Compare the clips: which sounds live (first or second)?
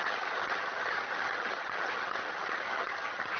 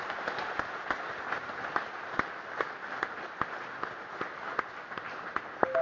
second